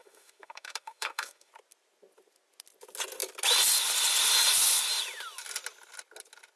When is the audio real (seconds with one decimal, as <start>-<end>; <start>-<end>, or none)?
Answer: 1.5-6.6